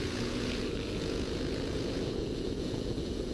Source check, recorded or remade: remade